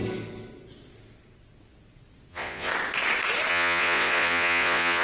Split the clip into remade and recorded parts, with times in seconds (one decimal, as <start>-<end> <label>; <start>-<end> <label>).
0.0-2.3 recorded; 2.3-2.7 remade; 2.7-3.5 recorded; 3.5-5.0 remade

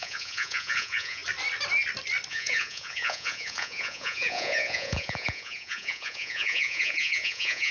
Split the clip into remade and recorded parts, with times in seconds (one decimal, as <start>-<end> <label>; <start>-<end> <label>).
0.0-1.2 remade; 1.2-2.3 recorded; 2.3-7.7 remade

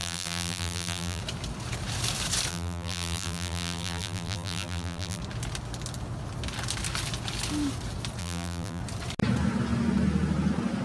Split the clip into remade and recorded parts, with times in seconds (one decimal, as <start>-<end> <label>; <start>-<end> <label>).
0.0-1.2 remade; 1.2-2.5 recorded; 2.5-5.2 remade; 5.2-8.2 recorded; 8.2-8.8 remade; 8.8-10.8 recorded

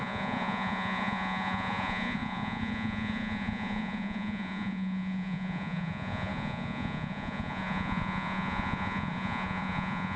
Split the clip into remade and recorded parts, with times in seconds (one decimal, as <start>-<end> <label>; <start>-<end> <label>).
0.0-10.2 remade

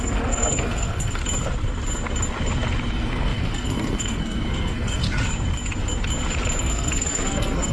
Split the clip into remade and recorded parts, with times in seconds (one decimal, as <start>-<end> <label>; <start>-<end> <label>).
0.0-1.2 remade; 1.2-2.9 recorded; 2.9-5.0 remade; 5.0-6.6 recorded; 6.6-7.7 remade